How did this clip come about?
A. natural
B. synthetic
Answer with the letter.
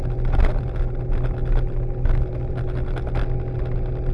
A